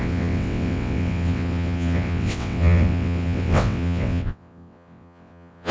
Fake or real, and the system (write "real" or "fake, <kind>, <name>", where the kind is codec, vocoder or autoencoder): fake, vocoder, WaveNeXt